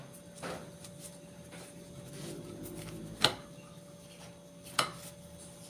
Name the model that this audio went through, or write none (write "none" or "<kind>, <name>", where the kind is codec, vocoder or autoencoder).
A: none